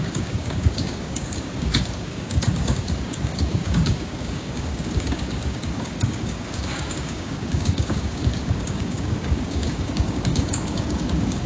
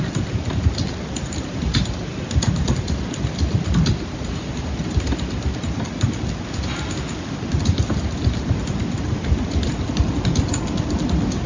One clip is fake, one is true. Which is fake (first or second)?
first